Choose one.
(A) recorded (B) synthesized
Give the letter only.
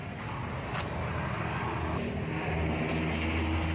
A